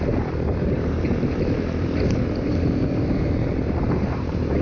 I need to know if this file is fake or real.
fake